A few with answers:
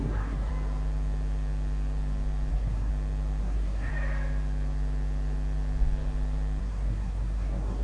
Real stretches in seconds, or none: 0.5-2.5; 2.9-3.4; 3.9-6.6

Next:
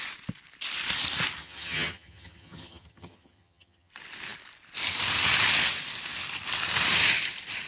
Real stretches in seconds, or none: 0.0-1.4; 3.9-7.7

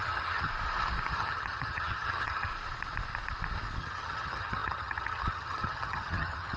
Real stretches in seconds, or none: 0.5-1.1; 2.5-3.8

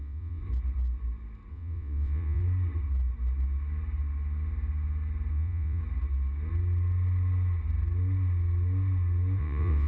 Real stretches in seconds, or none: 0.4-1.5; 2.4-5.3; 5.8-9.4

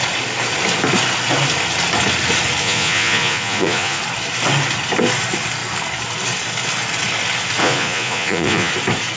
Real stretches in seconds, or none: 0.0-2.6; 4.0-7.6; 8.7-9.2

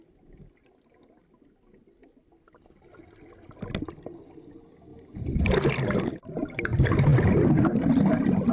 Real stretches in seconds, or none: 0.0-8.5

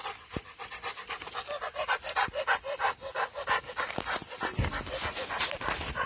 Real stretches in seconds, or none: 0.0-4.2; 4.8-6.1